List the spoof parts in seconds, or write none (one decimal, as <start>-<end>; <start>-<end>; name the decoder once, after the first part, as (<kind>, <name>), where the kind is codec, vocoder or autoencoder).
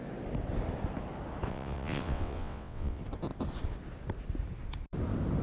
1.5-3.0 (vocoder, WaveNeXt)